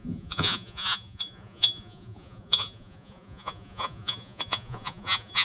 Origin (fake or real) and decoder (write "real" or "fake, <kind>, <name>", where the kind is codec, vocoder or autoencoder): fake, vocoder, Vocos